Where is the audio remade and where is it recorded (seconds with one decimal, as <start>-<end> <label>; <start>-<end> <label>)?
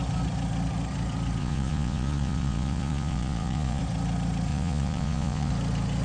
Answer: 0.0-1.4 recorded; 1.4-3.8 remade; 3.8-4.5 recorded; 4.5-5.5 remade; 5.5-6.0 recorded